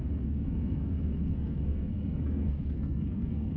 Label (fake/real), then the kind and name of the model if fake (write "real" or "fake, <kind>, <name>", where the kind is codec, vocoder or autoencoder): fake, codec, SNAC